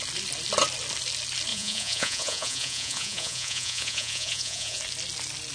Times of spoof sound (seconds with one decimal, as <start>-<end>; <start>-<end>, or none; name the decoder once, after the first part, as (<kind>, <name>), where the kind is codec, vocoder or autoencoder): 1.5-4.8 (vocoder, Vocos)